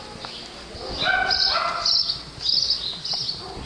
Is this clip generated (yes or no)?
no